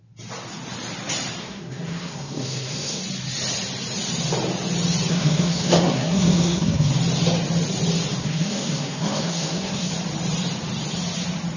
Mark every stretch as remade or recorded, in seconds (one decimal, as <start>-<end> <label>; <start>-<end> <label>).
0.0-1.4 recorded; 1.4-3.0 remade; 3.0-5.1 recorded; 5.1-6.9 remade; 6.9-8.2 recorded; 8.2-9.9 remade; 9.9-11.6 recorded